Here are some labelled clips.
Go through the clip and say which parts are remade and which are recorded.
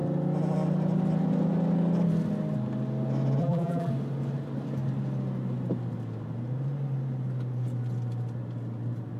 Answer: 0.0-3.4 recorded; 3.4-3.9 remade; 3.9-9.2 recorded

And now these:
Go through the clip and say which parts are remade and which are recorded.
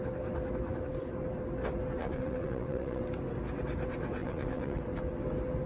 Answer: 0.0-2.0 recorded; 2.0-3.0 remade; 3.0-4.2 recorded; 4.2-4.8 remade; 4.8-5.7 recorded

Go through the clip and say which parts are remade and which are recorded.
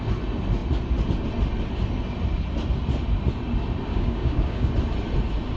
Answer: 0.0-3.9 recorded; 3.9-4.7 remade; 4.7-5.6 recorded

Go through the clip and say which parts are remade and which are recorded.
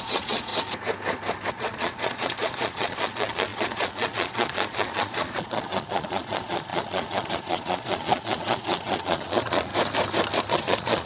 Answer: 0.0-0.5 remade; 0.5-1.5 recorded; 1.5-9.7 remade; 9.7-10.5 recorded; 10.5-11.1 remade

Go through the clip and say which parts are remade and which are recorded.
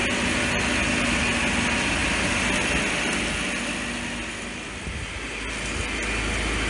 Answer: 0.0-6.7 recorded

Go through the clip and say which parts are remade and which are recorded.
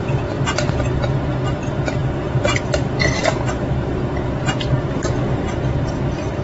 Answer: 0.0-6.4 recorded